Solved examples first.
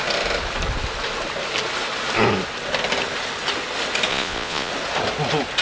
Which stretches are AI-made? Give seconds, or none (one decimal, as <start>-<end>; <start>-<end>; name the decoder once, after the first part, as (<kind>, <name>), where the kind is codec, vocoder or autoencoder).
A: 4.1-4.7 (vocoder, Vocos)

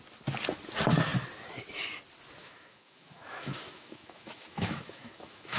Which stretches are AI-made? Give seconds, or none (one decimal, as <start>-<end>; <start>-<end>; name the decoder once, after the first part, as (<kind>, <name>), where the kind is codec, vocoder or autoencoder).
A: 2.4-5.6 (autoencoder, DAC-VAE)

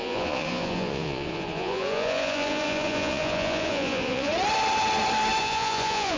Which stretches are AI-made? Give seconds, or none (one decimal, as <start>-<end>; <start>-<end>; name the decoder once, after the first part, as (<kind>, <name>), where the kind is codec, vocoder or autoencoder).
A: 0.0-4.3 (vocoder, Vocos); 5.4-6.2

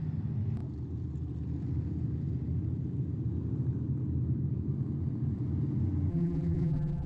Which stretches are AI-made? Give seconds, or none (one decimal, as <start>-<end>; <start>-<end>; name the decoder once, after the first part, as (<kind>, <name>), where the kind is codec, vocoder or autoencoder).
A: 6.1-7.1 (vocoder, BigVGAN v2)

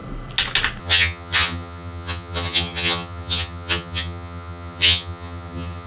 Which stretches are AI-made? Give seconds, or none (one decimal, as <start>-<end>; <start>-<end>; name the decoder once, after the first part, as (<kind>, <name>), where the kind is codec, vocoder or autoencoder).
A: 0.8-5.9 (vocoder, HiFi-GAN)

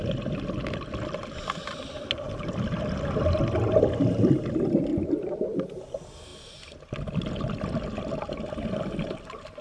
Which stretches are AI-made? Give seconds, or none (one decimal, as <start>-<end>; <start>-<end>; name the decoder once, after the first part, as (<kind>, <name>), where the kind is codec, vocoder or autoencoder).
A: 4.9-5.8 (vocoder, BigVGAN v2)

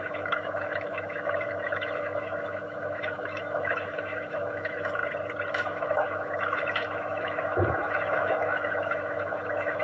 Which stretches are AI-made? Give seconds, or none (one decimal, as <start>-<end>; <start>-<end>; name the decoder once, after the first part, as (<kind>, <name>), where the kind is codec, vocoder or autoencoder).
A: 0.0-5.0 (autoencoder, DAC-VAE); 5.5-9.8